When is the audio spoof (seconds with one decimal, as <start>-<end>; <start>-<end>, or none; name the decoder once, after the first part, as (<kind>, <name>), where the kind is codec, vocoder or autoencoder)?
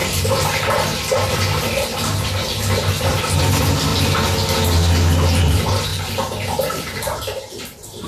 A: 0.0-3.4 (vocoder, BigVGAN v2); 5.9-7.0